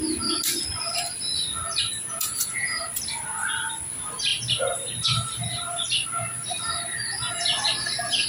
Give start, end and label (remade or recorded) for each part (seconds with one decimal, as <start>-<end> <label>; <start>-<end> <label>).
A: 0.0-1.9 recorded; 1.9-2.8 remade; 2.8-8.3 recorded